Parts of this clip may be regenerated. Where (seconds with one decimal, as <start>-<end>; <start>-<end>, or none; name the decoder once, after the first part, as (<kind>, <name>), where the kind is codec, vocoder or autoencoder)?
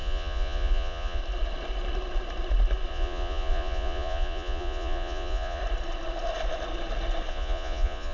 0.0-1.2 (vocoder, Vocos); 2.9-5.6; 7.3-8.1